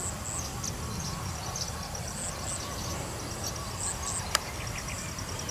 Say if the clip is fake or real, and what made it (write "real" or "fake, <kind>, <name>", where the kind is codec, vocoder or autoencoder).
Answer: real